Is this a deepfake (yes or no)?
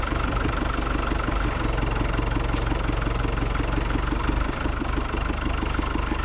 no